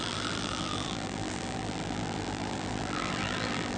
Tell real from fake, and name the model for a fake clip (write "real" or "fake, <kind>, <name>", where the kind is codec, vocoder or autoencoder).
fake, vocoder, BigVGAN v2